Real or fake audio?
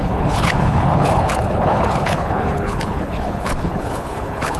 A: fake